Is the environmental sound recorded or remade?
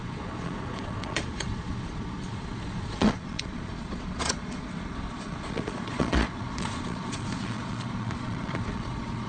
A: remade